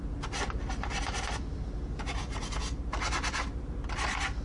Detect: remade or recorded recorded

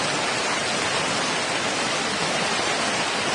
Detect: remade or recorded recorded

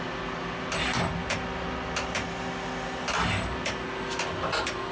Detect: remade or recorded recorded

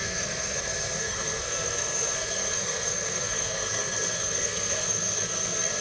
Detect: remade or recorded remade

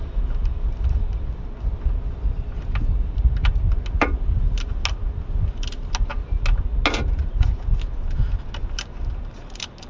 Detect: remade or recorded recorded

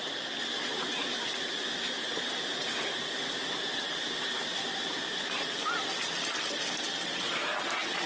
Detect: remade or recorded recorded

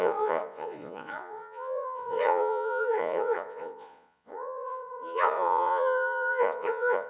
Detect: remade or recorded remade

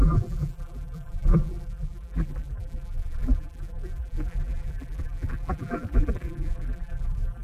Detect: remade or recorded remade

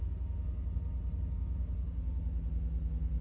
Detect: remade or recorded recorded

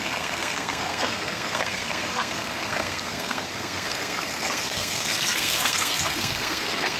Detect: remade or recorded remade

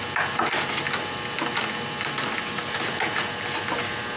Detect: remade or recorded recorded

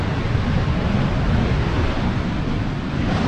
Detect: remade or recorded recorded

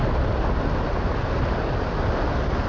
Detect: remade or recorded recorded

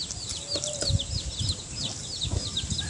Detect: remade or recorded recorded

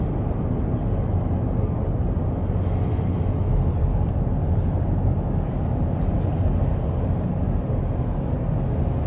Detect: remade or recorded recorded